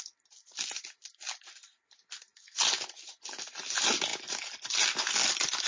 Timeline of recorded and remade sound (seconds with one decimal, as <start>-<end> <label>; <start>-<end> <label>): 0.0-5.7 recorded